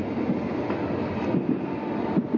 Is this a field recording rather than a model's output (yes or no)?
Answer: yes